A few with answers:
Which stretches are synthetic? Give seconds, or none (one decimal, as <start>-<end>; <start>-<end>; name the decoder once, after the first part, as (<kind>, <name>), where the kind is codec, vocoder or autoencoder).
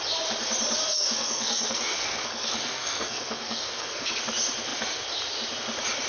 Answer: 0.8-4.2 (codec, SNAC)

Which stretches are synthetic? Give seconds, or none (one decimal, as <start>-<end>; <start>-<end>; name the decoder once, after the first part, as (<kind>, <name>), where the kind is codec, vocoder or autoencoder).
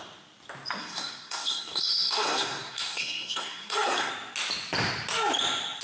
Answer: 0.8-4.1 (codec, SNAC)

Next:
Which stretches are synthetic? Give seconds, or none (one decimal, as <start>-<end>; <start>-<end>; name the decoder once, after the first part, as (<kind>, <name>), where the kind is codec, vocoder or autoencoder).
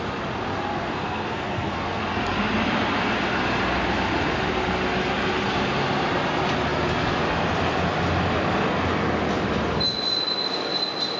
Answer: 0.7-2.0 (codec, SNAC)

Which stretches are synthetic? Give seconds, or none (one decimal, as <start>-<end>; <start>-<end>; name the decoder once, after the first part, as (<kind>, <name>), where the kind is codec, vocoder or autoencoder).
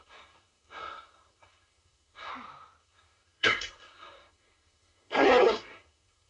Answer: 0.0-2.3 (codec, SNAC); 2.8-6.3